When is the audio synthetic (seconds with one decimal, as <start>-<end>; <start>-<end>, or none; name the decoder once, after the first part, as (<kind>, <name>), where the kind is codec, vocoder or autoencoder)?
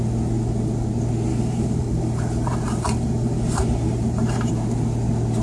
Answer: 1.3-4.5 (vocoder, BigVGAN v2)